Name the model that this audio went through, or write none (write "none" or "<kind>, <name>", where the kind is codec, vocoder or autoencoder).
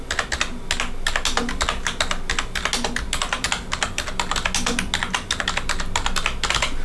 none